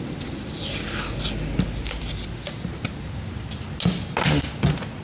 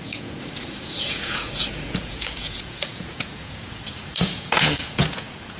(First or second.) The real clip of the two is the first